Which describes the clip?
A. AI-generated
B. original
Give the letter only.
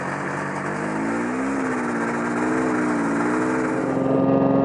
B